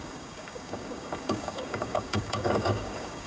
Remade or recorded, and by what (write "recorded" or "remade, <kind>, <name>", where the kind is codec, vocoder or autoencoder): remade, codec, DAC